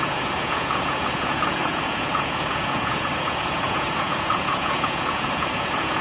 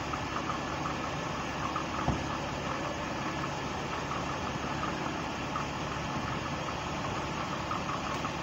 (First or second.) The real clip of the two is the second